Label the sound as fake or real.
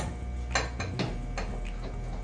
real